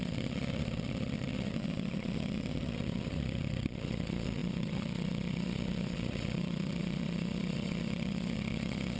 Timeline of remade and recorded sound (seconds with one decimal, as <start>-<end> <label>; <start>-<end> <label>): 0.0-9.0 remade

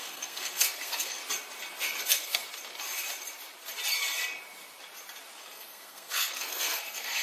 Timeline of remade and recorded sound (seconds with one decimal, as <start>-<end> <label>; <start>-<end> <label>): 0.0-1.2 remade; 1.2-2.0 recorded; 2.0-2.4 remade; 2.4-5.4 recorded; 5.4-7.2 remade

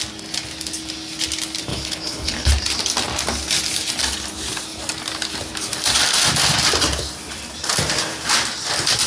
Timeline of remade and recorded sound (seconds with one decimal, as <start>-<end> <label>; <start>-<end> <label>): 0.0-1.7 recorded; 1.7-2.5 remade; 2.5-9.1 recorded